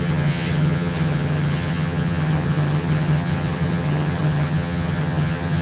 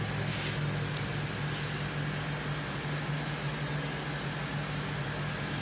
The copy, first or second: first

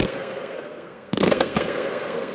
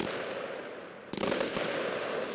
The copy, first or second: first